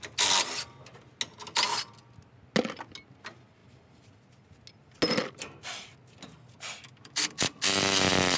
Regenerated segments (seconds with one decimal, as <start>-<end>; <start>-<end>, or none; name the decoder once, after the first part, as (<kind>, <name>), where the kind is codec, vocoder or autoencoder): none